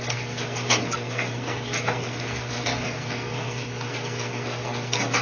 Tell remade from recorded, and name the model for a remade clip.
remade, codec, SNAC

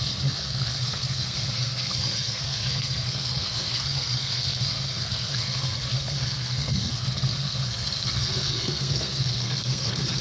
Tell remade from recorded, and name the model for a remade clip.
remade, codec, SNAC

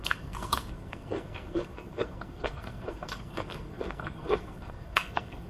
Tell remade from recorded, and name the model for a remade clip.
remade, codec, SNAC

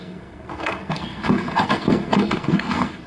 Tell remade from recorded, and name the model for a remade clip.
remade, codec, SNAC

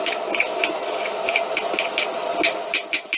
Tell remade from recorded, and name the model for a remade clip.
recorded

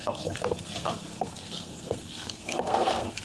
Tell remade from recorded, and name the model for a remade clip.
remade, codec, SNAC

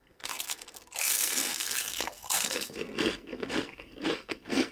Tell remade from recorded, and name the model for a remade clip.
remade, codec, SNAC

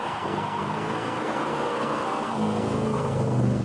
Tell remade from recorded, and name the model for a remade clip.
remade, codec, SNAC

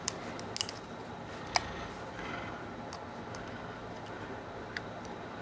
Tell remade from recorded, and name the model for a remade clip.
recorded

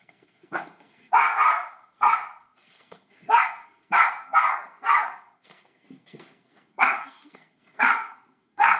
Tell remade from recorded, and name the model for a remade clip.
remade, codec, SNAC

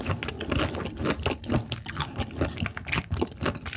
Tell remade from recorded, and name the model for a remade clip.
recorded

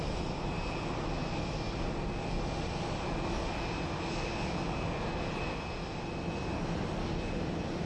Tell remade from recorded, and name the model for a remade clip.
recorded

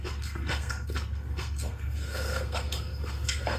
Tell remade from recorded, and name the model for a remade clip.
remade, codec, SNAC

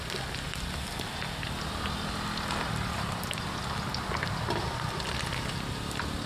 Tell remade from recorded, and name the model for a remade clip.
recorded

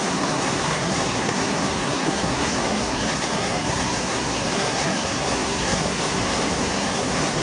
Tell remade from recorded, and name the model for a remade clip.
remade, codec, SNAC